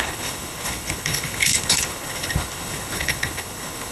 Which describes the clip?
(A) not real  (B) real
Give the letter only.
A